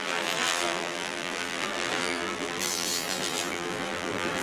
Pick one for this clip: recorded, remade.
remade